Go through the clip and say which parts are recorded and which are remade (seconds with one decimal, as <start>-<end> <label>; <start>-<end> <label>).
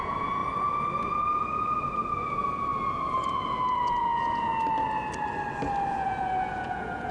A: 0.0-0.4 remade; 0.4-2.3 recorded; 2.3-4.5 remade; 4.5-5.9 recorded; 5.9-7.1 remade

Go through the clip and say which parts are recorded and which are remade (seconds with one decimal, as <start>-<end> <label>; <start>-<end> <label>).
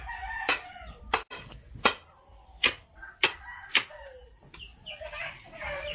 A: 0.0-5.9 recorded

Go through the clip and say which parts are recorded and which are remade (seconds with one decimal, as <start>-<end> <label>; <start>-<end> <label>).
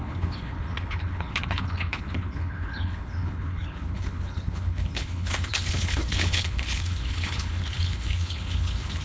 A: 0.0-9.0 remade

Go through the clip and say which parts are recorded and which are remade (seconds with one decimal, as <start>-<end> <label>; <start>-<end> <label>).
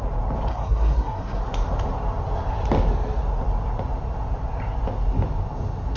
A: 0.0-0.5 recorded; 0.5-1.4 remade; 1.4-6.0 recorded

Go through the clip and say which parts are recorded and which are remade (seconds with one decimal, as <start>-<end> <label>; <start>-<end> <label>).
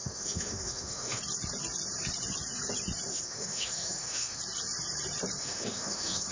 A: 0.0-1.2 remade; 1.2-3.1 recorded; 3.1-4.4 remade; 4.4-5.4 recorded; 5.4-6.3 remade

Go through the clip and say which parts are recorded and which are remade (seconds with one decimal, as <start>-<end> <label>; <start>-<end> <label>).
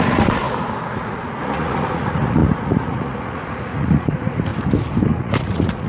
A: 0.0-0.4 remade; 0.4-0.9 recorded; 0.9-4.5 remade; 4.5-5.1 recorded; 5.1-5.9 remade